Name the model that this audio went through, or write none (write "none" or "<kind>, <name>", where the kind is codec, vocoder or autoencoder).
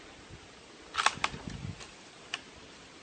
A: none